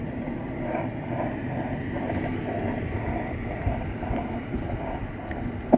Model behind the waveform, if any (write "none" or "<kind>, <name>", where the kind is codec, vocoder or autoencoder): none